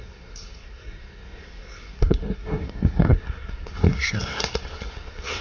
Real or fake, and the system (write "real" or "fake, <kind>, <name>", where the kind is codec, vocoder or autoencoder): fake, codec, SNAC